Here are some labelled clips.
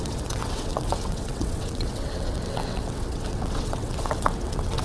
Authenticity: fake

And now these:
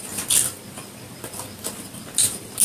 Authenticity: real